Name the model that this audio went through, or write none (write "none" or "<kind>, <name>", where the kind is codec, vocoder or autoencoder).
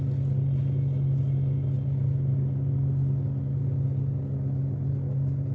none